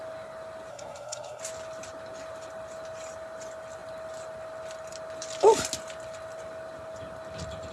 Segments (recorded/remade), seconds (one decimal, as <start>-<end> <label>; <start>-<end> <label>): 0.0-0.7 recorded; 0.7-1.4 remade; 1.4-7.7 recorded